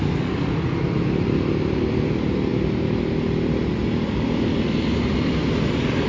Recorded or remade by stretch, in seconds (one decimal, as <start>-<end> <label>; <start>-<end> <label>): 0.0-6.1 recorded